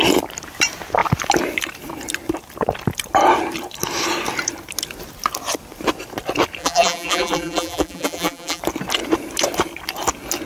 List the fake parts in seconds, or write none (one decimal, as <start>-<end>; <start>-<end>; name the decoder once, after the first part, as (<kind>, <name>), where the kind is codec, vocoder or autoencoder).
6.6-8.6 (vocoder, BigVGAN v2)